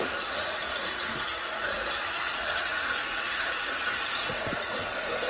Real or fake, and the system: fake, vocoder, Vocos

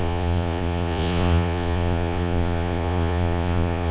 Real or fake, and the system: fake, vocoder, Vocos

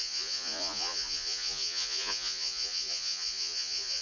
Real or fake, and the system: fake, vocoder, Vocos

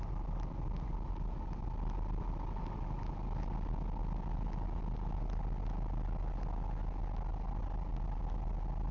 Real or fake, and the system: real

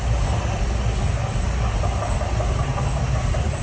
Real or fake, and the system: real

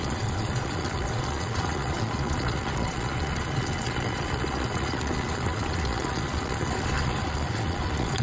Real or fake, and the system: fake, vocoder, Vocos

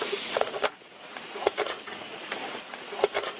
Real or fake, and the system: fake, vocoder, Vocos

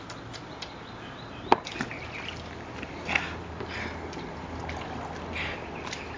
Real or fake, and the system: real